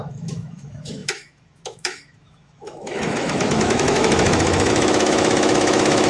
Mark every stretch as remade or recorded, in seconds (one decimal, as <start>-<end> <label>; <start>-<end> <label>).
0.0-6.1 remade